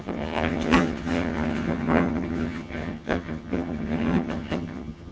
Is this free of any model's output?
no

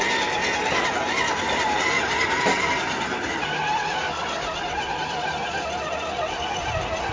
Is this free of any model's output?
yes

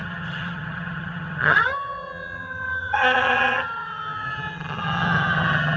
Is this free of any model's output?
no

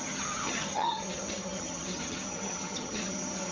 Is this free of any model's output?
no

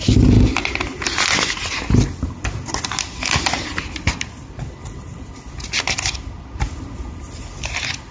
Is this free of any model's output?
yes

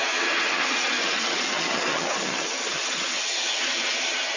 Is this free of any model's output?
no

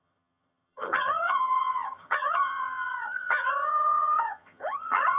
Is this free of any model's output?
no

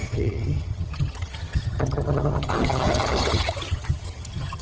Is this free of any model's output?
no